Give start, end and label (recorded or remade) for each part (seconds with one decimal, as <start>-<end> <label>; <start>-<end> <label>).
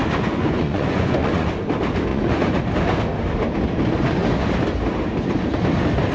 0.0-1.5 remade; 1.5-2.1 recorded; 2.1-2.6 remade; 2.6-6.1 recorded